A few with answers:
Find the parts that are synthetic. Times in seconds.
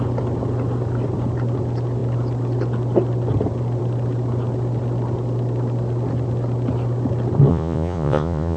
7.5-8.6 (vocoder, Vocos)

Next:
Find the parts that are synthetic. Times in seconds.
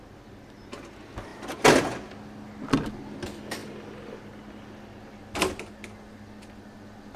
none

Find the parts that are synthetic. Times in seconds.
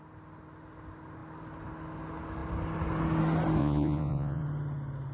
3.6-4.4 (vocoder, Vocos)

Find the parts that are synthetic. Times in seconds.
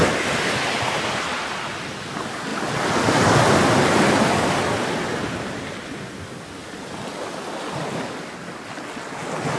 none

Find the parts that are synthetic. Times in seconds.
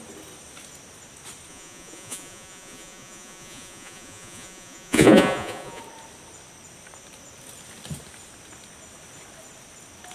1.5-5.8 (vocoder, Vocos)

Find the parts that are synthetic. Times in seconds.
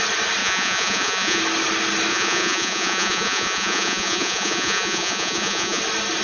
0.4-1.4 (vocoder, Vocos); 2.1-5.8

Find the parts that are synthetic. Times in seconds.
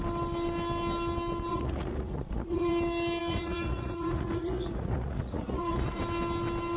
1.5-2.7 (vocoder, Vocos); 3.2-6.0